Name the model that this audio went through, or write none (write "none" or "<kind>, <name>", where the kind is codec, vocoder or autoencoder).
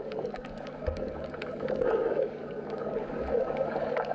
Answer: codec, DAC